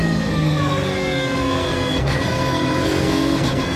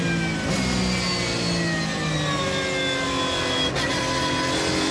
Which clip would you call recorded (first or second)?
second